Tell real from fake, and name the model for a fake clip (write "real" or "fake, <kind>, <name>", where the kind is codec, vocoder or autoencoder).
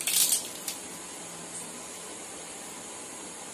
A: real